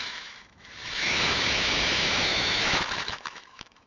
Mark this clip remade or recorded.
remade